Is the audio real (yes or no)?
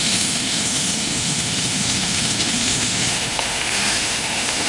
no